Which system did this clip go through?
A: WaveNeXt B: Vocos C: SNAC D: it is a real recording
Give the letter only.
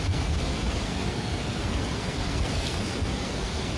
C